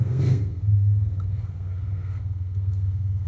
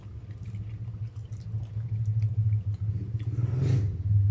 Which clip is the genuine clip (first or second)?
second